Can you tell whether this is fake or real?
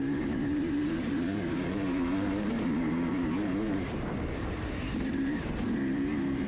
fake